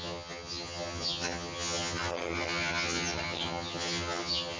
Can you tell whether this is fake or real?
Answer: fake